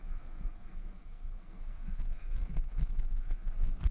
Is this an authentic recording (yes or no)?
no